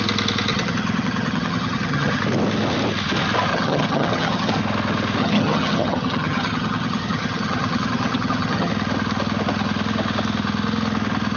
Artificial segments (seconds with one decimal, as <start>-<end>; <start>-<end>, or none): 0.5-2.2; 3.5-4.5; 5.2-8.7